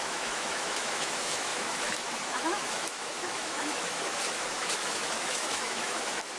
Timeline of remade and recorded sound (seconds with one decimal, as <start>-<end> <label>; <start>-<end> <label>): 0.0-6.4 remade